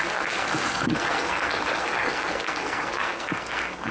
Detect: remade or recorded remade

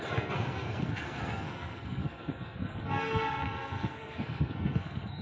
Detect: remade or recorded remade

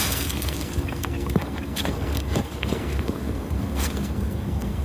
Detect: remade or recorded remade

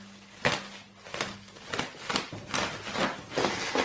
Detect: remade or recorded recorded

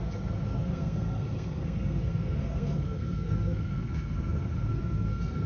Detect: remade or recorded remade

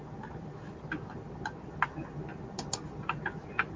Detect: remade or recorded recorded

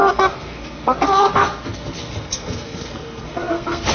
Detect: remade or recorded remade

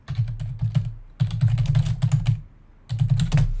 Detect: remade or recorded recorded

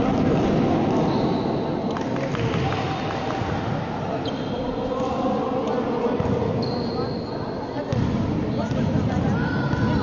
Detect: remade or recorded recorded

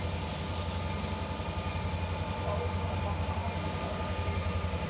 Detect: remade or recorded recorded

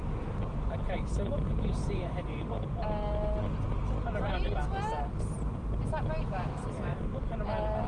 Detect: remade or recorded recorded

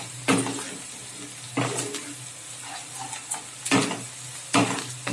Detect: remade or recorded recorded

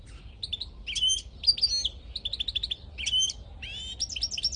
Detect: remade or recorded recorded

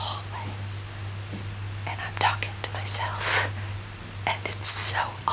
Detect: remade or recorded recorded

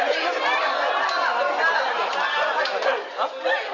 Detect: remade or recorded recorded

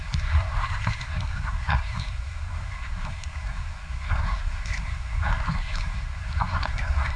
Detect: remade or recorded remade